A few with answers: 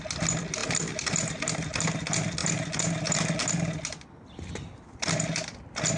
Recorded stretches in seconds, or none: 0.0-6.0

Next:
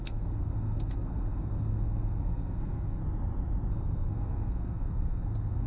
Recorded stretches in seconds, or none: 3.0-3.7

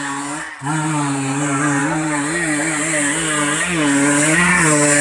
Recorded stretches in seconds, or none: 0.0-5.0

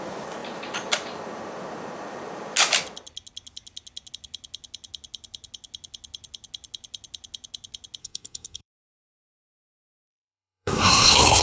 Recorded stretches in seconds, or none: 0.0-8.0

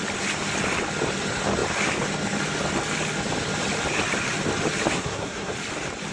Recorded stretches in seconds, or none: 0.0-4.9; 5.5-6.1